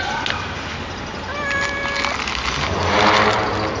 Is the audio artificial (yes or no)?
no